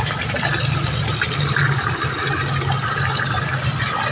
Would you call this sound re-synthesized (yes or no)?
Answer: no